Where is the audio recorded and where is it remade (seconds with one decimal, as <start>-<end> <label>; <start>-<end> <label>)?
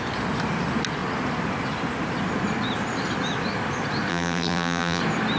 0.0-4.1 recorded; 4.1-5.0 remade; 5.0-5.4 recorded